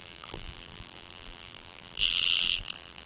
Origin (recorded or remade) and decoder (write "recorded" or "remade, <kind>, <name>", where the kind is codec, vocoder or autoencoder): remade, vocoder, BigVGAN v2